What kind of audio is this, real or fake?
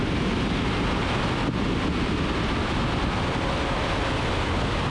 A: real